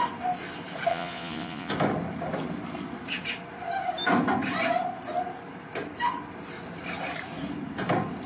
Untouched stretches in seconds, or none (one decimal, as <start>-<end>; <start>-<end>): 0.0-0.9; 1.7-8.3